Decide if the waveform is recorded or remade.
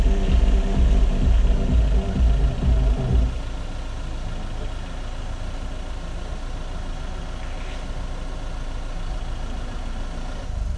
recorded